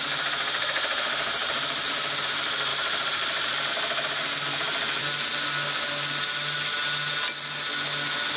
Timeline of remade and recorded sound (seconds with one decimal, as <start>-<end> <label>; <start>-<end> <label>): 0.0-1.4 recorded; 1.4-1.9 remade; 1.9-2.7 recorded; 2.7-3.7 remade; 3.7-8.4 recorded